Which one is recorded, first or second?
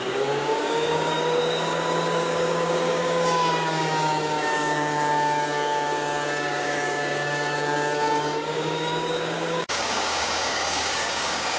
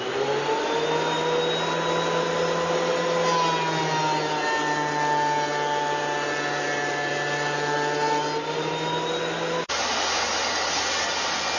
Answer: second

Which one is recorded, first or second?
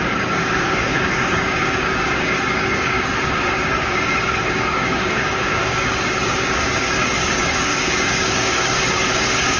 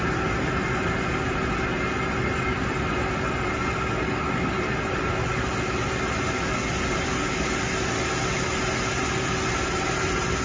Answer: second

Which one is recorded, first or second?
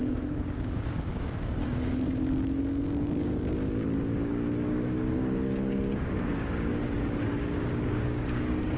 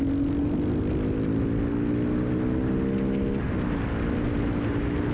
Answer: second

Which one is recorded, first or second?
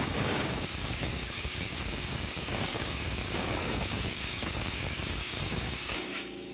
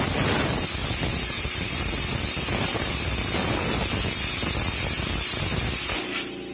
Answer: second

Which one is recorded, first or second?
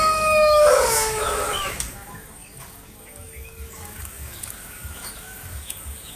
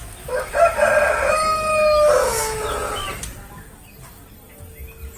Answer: second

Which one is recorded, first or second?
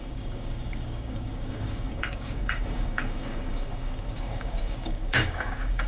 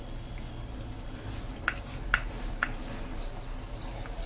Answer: second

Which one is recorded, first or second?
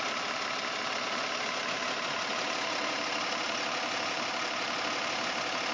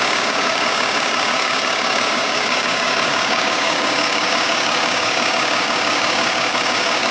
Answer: first